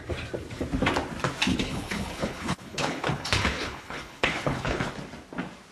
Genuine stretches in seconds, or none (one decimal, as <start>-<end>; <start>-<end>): 0.0-1.5; 4.9-5.7